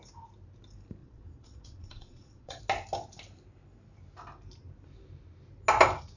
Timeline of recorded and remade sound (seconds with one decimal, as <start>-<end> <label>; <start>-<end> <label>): 0.0-1.0 recorded; 1.0-2.6 remade; 2.6-6.2 recorded